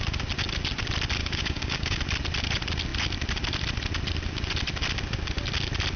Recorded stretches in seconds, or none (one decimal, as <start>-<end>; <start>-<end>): 0.0-1.2; 2.0-6.0